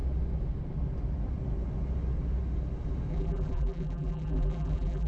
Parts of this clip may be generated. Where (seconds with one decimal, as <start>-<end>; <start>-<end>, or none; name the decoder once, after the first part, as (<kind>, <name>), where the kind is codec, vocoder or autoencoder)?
3.1-5.1 (vocoder, BigVGAN v2)